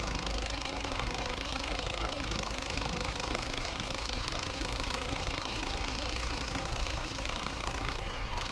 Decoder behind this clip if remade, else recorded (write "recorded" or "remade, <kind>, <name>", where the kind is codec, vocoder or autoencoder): remade, codec, SNAC